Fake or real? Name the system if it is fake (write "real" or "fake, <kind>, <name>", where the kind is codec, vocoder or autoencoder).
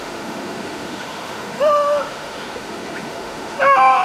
fake, autoencoder, DAC-VAE